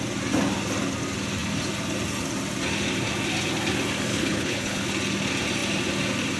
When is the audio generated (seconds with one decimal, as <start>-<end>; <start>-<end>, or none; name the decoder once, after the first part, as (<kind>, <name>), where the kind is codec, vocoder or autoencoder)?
4.1-4.9 (codec, HILCodec)